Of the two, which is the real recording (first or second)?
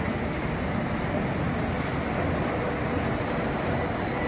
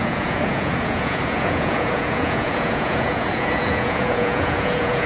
first